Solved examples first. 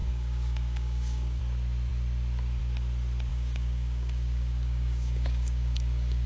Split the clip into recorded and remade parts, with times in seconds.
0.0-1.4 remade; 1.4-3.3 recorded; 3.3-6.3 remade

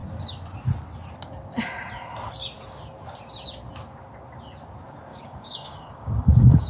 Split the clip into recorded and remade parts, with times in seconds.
0.0-5.1 recorded; 5.1-6.7 remade

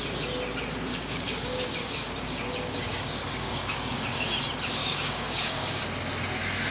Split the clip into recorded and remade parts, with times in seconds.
0.0-0.9 recorded; 0.9-4.3 remade; 4.3-4.8 recorded; 4.8-5.8 remade; 5.8-6.7 recorded

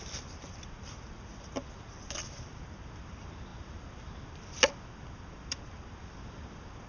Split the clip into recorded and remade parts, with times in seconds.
0.0-6.9 recorded